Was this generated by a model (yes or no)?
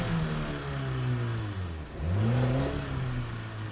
no